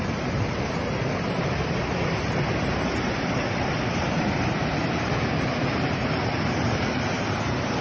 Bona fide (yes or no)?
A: no